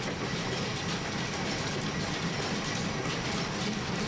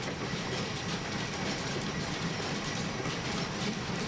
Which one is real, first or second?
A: first